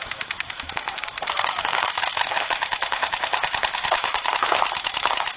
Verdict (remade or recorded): remade